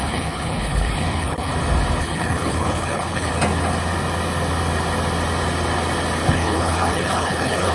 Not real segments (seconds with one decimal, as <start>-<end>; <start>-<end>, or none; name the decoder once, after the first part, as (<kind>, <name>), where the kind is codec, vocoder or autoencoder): 0.0-1.5 (codec, HILCodec); 2.0-3.3; 6.3-7.7